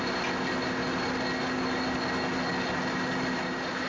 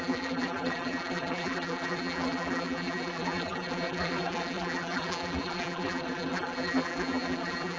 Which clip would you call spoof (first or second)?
second